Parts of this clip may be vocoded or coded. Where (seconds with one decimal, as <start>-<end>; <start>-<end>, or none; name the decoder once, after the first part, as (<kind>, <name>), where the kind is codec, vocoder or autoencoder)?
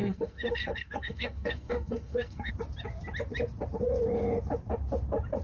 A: 0.0-2.5 (codec, SNAC)